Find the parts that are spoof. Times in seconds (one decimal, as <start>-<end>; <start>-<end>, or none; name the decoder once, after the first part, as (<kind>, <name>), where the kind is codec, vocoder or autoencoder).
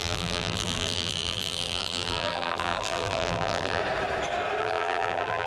0.0-3.8 (vocoder, BigVGAN v2); 4.6-5.5